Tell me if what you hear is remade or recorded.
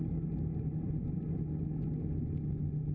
recorded